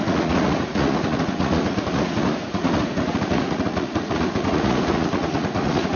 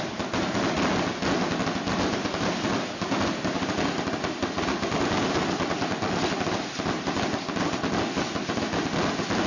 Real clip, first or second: second